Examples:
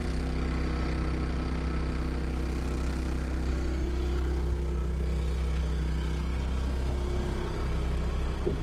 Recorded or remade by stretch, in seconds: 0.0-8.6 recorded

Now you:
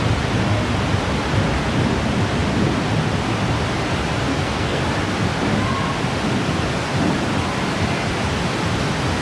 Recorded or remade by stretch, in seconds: 0.0-4.3 recorded; 4.3-4.8 remade; 4.8-9.2 recorded

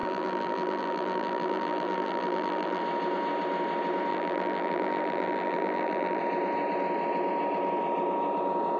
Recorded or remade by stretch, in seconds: 0.0-2.8 remade; 2.8-4.1 recorded; 4.1-6.2 remade; 6.2-8.8 recorded